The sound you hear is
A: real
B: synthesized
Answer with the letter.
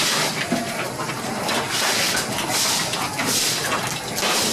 A